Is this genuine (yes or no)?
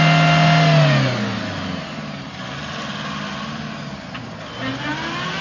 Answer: yes